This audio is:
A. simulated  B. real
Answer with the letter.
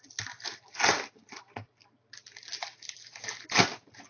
B